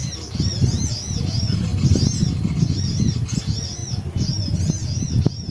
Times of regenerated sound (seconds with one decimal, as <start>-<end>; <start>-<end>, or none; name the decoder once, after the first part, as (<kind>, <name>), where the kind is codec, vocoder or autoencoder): none